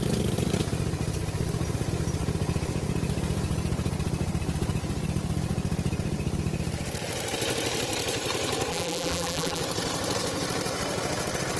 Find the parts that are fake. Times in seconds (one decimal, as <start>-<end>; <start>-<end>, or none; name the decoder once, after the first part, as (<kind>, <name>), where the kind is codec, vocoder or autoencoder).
8.7-9.6 (vocoder, BigVGAN v2)